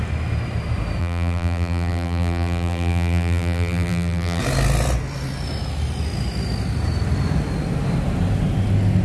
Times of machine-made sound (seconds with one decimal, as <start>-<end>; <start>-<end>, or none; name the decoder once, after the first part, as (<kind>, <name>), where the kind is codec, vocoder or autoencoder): 1.0-4.4 (vocoder, BigVGAN v2)